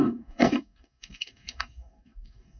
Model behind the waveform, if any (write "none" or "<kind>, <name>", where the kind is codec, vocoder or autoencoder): codec, SNAC